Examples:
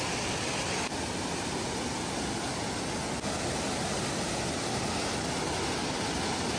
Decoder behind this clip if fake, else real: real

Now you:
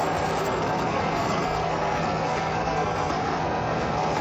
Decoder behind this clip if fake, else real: fake, codec, SNAC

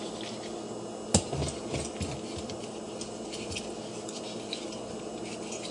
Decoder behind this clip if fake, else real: real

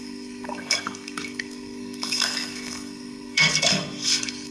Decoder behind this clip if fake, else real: fake, codec, SNAC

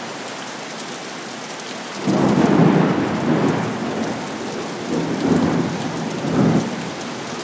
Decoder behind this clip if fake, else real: real